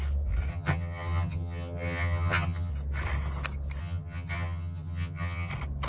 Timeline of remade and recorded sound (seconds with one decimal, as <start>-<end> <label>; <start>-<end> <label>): 0.0-0.5 recorded; 0.5-2.7 remade; 2.7-3.8 recorded; 3.8-5.5 remade; 5.5-5.9 recorded